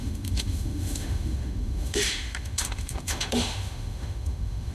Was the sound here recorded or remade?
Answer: remade